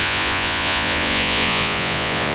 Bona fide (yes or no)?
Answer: no